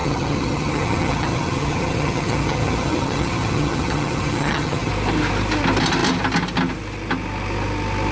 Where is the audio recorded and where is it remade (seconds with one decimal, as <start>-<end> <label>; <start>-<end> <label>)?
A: 0.0-4.9 remade; 4.9-8.1 recorded